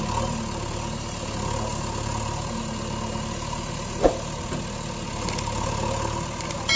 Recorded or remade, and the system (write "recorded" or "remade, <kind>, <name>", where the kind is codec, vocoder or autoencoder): recorded